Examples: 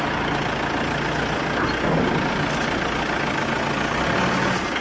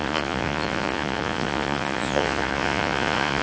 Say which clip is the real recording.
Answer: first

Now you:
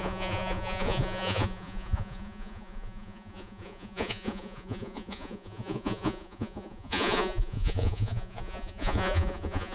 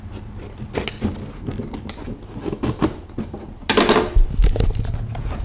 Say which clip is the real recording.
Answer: second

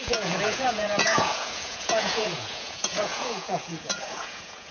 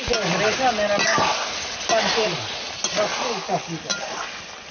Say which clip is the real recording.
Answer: second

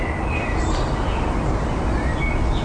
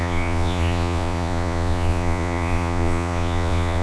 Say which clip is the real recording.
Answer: first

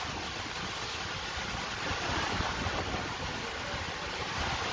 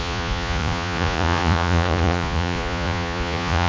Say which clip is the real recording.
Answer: first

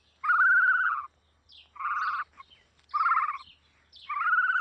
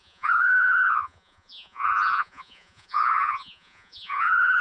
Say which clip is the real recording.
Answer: first